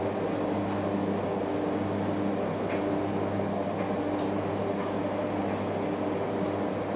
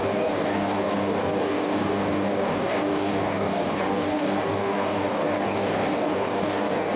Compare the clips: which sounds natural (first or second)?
first